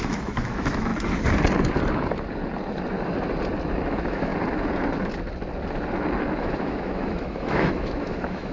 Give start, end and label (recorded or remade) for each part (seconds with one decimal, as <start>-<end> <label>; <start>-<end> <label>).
0.0-0.9 remade; 0.9-3.9 recorded; 3.9-4.3 remade; 4.3-6.4 recorded; 6.4-8.5 remade